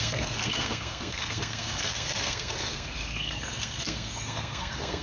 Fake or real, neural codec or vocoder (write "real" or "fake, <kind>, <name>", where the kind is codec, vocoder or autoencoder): fake, codec, SNAC